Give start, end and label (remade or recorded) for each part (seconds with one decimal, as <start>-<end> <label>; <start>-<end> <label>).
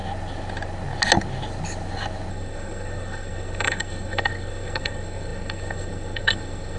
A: 0.0-2.3 recorded; 2.3-6.8 remade